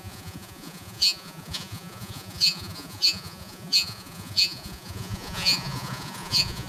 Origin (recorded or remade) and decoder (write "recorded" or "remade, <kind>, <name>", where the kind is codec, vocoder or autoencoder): remade, vocoder, Vocos